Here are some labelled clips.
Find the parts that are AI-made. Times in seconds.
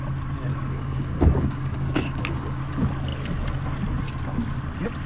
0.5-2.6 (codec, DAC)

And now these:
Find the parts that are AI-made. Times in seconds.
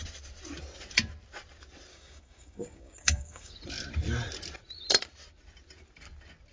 1.9-3.5 (codec, DAC)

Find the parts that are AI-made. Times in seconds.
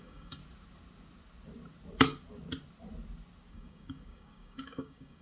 0.0-0.4 (codec, DAC); 3.5-5.2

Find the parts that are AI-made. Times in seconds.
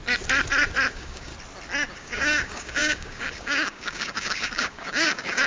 0.9-1.3 (codec, DAC); 1.9-5.5